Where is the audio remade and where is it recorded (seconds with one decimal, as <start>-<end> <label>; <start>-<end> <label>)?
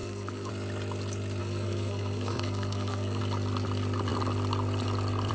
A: 0.0-0.5 remade; 0.5-1.4 recorded; 1.4-3.2 remade; 3.2-5.3 recorded